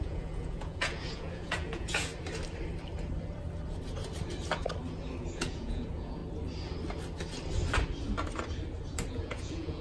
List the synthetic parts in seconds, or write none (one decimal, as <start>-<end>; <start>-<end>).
0.0-2.1; 5.2-6.2; 9.1-9.8